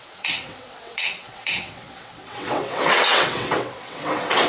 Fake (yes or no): yes